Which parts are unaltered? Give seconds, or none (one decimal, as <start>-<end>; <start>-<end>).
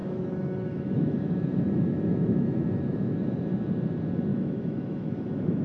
3.4-4.3